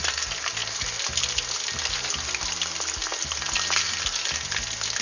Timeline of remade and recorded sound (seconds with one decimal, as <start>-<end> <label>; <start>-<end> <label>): 0.0-5.0 recorded